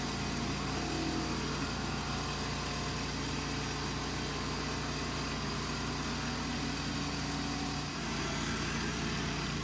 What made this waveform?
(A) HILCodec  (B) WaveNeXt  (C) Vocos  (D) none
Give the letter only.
D